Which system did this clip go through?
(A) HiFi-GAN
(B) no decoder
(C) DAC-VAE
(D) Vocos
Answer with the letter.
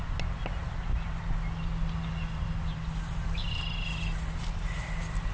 B